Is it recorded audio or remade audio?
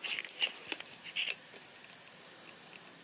recorded